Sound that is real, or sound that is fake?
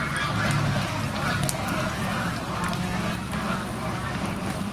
real